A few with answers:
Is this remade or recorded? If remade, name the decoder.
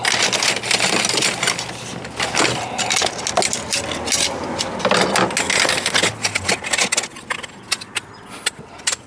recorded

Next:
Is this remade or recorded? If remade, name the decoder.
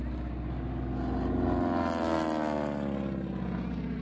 recorded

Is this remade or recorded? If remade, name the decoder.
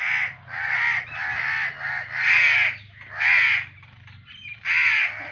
recorded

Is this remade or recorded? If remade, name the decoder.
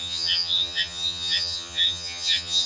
remade, vocoder, HiFi-GAN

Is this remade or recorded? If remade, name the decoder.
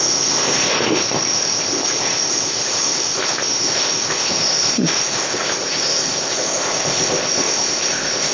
remade, codec, ZipCodec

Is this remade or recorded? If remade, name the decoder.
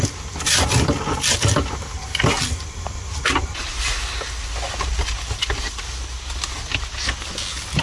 recorded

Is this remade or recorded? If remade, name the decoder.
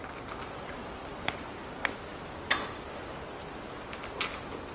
recorded